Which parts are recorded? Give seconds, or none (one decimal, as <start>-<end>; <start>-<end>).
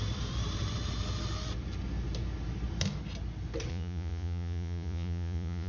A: 0.0-3.7